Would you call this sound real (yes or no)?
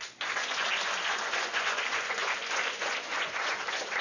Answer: no